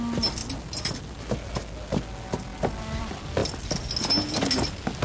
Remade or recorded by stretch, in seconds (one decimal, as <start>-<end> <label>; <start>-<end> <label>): 0.0-5.0 recorded